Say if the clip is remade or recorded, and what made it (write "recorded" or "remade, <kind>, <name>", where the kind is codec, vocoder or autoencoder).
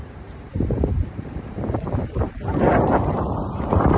remade, vocoder, BigVGAN v2